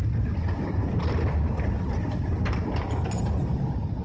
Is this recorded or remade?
recorded